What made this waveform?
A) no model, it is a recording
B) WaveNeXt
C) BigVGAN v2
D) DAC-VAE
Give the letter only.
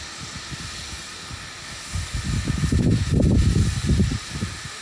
A